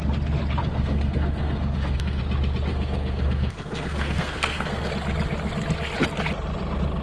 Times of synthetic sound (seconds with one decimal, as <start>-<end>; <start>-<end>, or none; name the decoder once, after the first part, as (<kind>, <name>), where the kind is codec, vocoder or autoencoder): 0.6-2.2 (codec, SNAC); 2.7-4.9